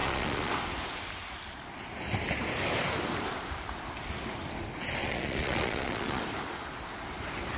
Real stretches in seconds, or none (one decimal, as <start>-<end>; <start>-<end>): 0.5-5.0; 6.2-7.6